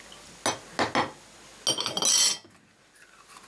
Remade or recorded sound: recorded